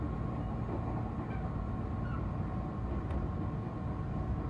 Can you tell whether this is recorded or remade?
recorded